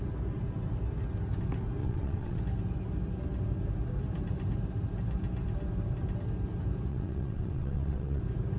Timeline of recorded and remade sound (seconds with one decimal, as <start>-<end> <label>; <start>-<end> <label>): 0.0-1.8 recorded; 1.8-2.4 remade; 2.4-6.9 recorded; 6.9-8.2 remade; 8.2-8.6 recorded